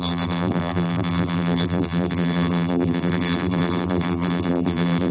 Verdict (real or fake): fake